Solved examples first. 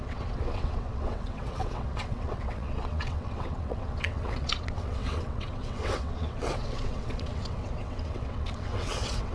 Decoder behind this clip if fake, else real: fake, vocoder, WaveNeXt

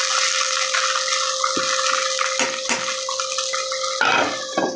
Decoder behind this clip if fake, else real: real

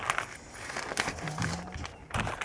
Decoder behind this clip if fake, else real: real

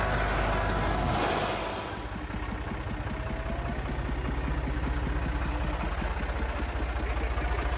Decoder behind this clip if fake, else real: real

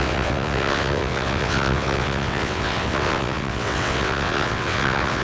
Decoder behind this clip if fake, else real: fake, vocoder, WaveNeXt